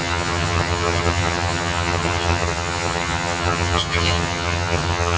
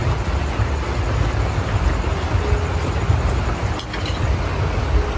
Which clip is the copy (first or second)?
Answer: first